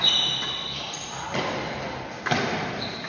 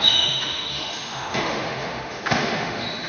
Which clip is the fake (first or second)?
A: second